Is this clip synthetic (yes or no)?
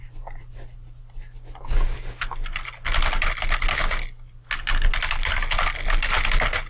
no